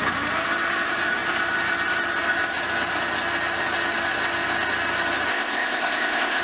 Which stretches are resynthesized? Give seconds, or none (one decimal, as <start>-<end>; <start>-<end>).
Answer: 5.3-6.4